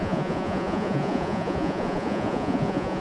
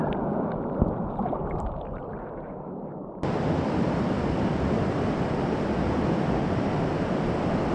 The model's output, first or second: first